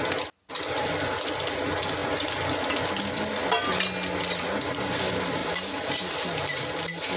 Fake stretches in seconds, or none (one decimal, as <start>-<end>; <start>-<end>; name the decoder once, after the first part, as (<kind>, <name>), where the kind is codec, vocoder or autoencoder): none